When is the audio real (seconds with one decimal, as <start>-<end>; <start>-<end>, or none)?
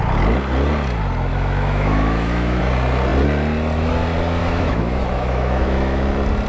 0.0-1.3; 2.6-4.4; 6.0-6.5